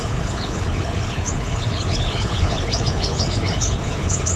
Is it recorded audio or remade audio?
remade